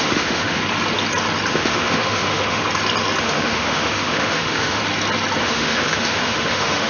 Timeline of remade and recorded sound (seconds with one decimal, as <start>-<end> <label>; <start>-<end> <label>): 0.0-0.6 remade; 0.6-1.5 recorded; 1.5-2.6 remade; 2.6-3.2 recorded; 3.2-4.8 remade; 4.8-5.4 recorded; 5.4-6.9 remade